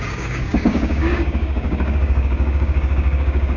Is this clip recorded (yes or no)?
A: no